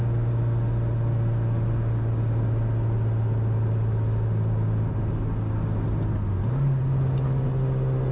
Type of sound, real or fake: real